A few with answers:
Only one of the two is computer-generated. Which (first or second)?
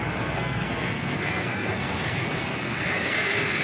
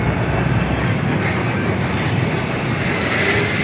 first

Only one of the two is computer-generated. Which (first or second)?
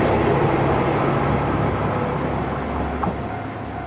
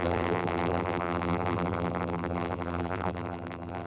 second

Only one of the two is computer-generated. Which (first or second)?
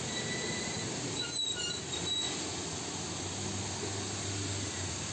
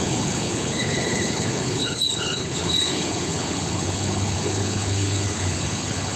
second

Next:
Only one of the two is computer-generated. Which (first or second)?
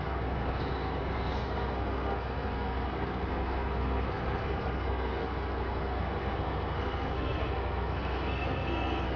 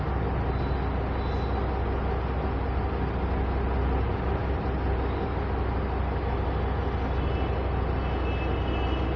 first